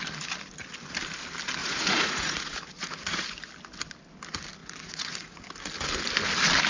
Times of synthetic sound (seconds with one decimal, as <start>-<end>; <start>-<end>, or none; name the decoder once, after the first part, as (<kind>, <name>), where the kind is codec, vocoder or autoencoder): 1.6-3.5 (vocoder, Vocos); 4.6-5.4